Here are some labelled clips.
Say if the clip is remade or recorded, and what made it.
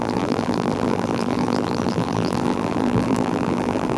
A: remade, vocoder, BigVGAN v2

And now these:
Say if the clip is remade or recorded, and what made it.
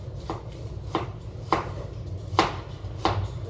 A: recorded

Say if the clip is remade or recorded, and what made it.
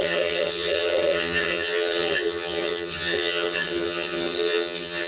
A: remade, vocoder, HiFi-GAN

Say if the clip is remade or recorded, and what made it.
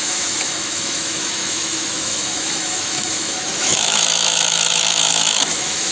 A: remade, autoencoder, DAC-VAE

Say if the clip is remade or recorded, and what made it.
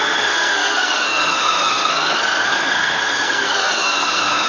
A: remade, codec, SNAC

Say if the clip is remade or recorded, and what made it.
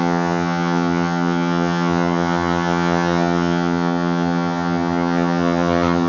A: remade, vocoder, HiFi-GAN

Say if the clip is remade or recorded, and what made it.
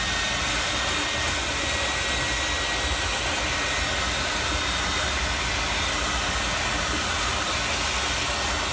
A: recorded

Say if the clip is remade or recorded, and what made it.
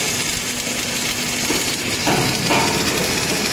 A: recorded